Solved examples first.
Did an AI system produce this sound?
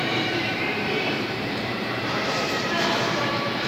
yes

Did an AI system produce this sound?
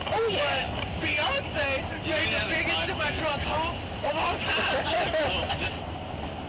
no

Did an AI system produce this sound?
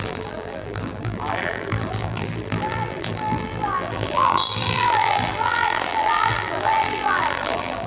yes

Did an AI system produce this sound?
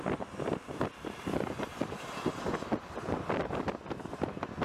no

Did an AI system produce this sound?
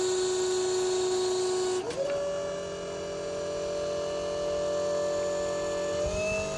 no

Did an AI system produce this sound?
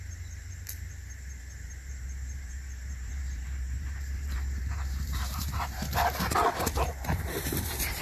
yes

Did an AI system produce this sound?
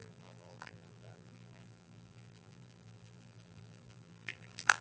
yes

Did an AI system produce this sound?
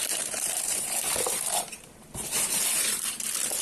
yes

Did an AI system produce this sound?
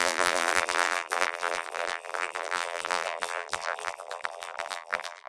yes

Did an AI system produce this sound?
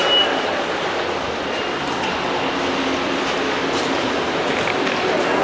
no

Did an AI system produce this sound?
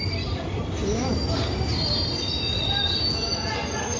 no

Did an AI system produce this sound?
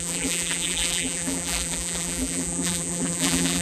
yes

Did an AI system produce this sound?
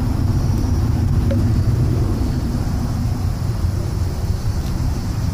yes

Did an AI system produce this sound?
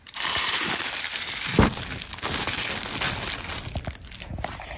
no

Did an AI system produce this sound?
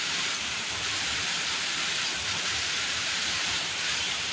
yes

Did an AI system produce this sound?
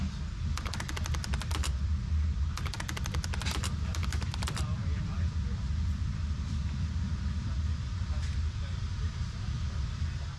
yes